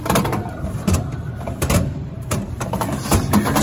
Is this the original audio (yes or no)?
no